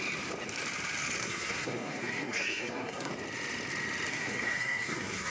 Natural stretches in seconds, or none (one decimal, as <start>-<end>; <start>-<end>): 0.0-1.2; 3.1-4.1

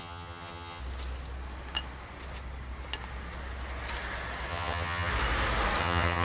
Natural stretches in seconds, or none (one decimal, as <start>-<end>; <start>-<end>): 0.8-4.5; 5.1-5.8

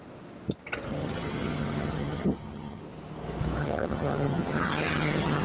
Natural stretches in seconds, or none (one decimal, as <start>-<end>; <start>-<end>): 0.0-0.9; 2.8-3.6

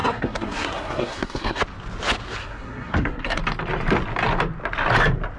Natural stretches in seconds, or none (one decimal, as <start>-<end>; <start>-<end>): 1.6-2.4; 3.4-5.4

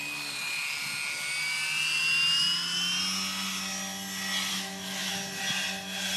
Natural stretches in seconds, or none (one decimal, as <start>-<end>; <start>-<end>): 0.0-4.5; 5.1-6.2

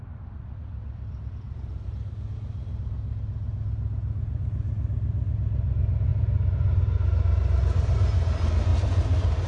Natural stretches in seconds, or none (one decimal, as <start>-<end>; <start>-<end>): 0.0-0.6; 2.1-8.7

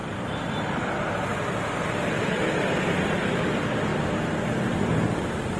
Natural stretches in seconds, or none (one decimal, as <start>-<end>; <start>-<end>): 3.3-5.6